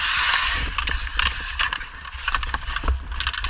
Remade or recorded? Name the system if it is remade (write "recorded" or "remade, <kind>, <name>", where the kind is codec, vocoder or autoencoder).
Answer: recorded